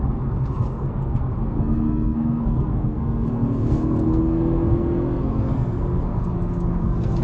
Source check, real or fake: fake